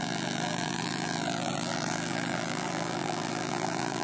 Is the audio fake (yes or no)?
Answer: yes